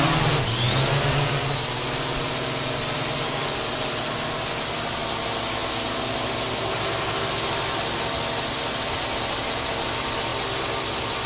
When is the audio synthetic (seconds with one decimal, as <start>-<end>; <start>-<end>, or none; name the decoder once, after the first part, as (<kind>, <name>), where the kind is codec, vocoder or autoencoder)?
none